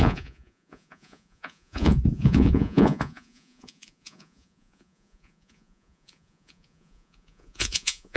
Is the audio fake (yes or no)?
yes